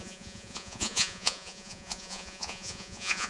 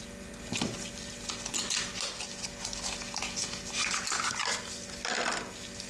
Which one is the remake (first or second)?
first